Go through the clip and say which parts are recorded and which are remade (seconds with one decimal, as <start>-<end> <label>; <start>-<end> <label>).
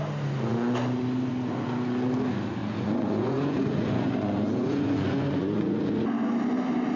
0.0-2.6 recorded; 2.6-6.0 remade; 6.0-7.0 recorded